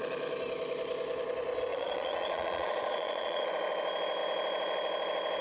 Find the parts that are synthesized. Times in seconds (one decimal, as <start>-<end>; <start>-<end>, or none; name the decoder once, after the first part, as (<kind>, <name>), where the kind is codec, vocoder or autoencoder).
1.7-3.5 (vocoder, Vocos)